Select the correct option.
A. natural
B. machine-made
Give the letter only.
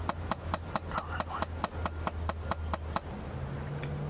A